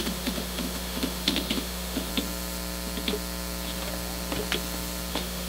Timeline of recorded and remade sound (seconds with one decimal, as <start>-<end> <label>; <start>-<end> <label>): 0.0-2.1 remade; 2.1-5.1 recorded; 5.1-5.5 remade